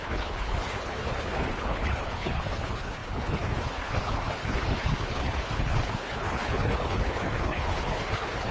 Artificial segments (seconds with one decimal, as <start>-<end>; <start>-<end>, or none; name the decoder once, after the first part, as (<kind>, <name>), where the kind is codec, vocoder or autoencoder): 0.0-8.5 (codec, HILCodec)